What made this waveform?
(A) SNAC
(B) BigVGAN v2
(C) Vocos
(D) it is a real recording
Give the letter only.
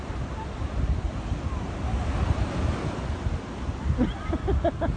D